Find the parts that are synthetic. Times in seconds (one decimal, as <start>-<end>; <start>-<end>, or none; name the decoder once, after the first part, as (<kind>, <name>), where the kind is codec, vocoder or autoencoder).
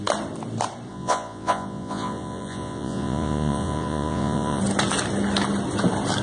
0.9-4.6 (vocoder, Vocos)